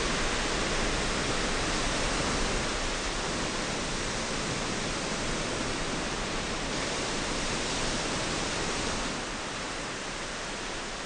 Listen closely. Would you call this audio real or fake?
real